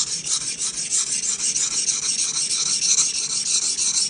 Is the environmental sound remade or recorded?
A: recorded